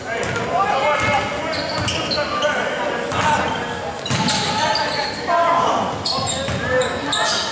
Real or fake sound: real